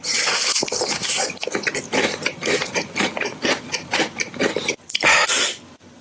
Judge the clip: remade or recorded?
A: recorded